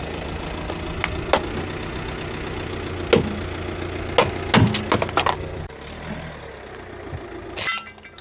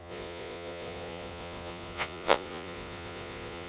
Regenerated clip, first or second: second